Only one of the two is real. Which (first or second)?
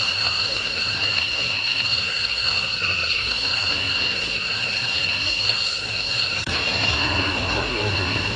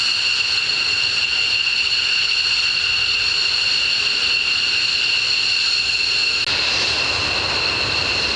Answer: second